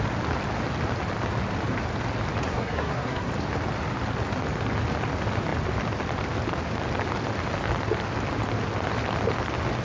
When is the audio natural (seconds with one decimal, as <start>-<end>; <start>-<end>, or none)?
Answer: 0.0-2.5; 3.3-9.8